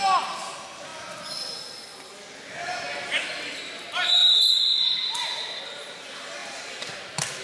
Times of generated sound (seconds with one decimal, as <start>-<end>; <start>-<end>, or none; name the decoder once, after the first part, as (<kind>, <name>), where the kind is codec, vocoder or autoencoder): 4.2-5.6 (vocoder, BigVGAN v2); 6.4-7.0